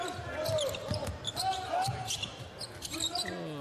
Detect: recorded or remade recorded